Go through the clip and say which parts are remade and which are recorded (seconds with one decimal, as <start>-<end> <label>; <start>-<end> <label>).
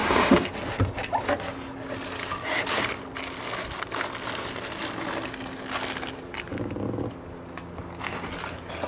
0.0-0.5 remade; 0.5-8.9 recorded